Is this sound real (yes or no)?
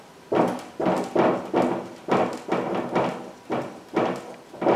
yes